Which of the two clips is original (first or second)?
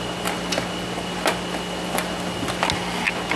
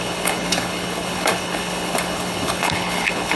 first